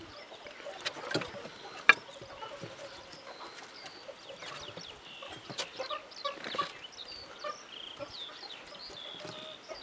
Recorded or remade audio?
recorded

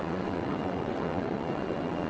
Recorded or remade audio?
remade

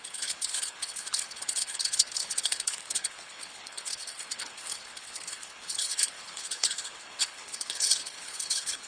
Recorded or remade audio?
remade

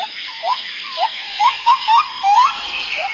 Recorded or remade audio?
remade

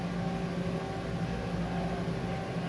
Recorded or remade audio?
recorded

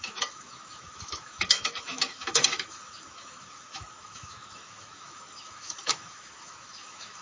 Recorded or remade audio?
remade